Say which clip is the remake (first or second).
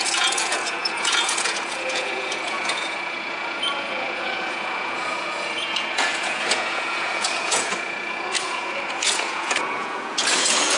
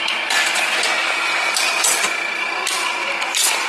first